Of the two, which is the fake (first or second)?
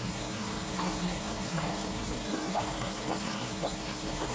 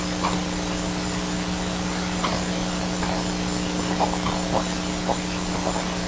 first